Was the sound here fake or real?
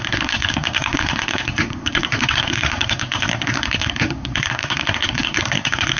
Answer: fake